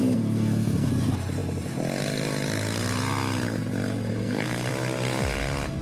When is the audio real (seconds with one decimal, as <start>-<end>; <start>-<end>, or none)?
0.9-4.1; 4.7-5.8